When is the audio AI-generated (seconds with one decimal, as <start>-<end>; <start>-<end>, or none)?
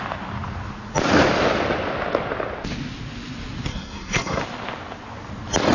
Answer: 3.7-4.4